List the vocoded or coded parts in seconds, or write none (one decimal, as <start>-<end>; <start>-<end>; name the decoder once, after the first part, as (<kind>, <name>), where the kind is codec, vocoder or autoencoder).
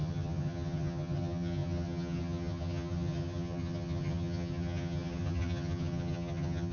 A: 0.0-6.7 (vocoder, HiFi-GAN)